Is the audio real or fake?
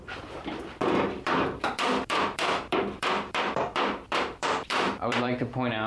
fake